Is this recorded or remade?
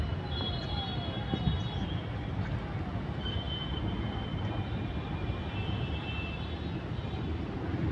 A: recorded